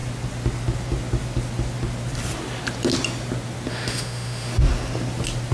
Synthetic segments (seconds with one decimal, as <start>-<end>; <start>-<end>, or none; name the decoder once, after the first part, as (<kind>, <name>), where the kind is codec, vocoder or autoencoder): 3.7-4.5 (autoencoder, DAC-VAE)